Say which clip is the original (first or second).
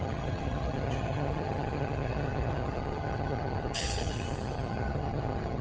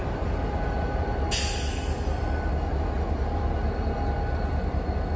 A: second